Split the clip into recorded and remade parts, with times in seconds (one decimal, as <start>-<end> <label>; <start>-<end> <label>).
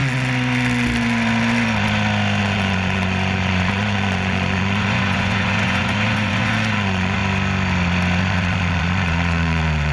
0.0-2.4 recorded; 2.4-7.2 remade; 7.2-8.2 recorded; 8.2-9.9 remade